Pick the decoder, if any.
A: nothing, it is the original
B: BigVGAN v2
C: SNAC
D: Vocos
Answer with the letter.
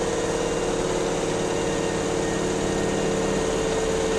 A